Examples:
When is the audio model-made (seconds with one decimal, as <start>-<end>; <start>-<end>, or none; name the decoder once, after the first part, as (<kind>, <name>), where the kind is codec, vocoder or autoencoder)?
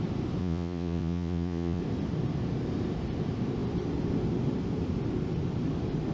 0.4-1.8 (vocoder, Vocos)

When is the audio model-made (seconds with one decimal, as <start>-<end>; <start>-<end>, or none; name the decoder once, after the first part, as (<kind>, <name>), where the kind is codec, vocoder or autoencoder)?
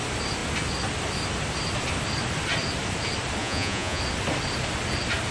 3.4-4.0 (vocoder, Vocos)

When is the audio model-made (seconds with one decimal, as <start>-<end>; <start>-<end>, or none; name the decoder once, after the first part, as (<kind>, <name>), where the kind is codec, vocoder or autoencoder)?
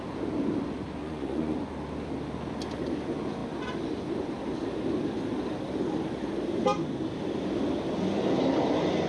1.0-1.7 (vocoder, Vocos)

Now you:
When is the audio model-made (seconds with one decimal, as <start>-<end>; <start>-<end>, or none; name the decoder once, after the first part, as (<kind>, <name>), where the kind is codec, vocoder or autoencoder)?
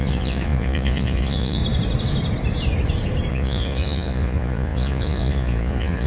0.0-1.6 (vocoder, Vocos); 3.3-6.1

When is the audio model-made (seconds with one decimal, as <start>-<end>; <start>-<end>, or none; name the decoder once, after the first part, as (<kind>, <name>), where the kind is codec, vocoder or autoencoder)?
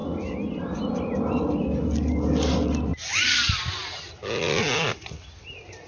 none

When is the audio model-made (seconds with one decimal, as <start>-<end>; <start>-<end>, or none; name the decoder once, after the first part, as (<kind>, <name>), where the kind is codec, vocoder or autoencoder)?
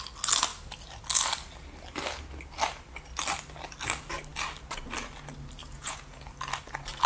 5.6-6.3 (vocoder, Vocos)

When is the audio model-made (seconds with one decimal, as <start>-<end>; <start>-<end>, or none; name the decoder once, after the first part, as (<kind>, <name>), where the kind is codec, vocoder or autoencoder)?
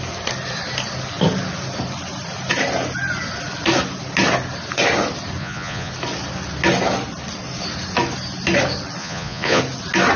5.4-5.9 (vocoder, Vocos); 9.0-9.6